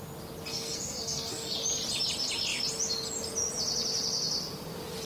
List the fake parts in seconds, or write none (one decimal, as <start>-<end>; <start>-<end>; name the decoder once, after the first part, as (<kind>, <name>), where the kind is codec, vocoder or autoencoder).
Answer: 0.5-1.6 (codec, SNAC)